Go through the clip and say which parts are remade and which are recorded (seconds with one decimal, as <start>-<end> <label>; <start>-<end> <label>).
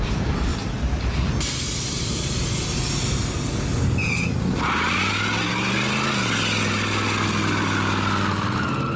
0.0-0.5 recorded; 0.5-2.6 remade; 2.6-9.0 recorded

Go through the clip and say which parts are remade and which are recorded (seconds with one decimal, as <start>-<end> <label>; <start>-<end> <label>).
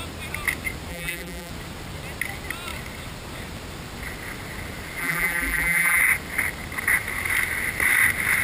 0.0-0.9 recorded; 0.9-1.5 remade; 1.5-5.0 recorded; 5.0-6.0 remade; 6.0-8.4 recorded